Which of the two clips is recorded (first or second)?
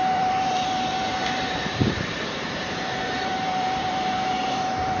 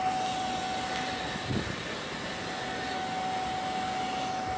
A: second